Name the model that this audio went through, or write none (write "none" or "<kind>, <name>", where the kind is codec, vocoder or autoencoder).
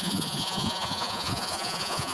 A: vocoder, Vocos